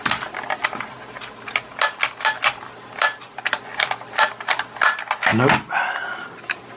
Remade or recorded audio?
recorded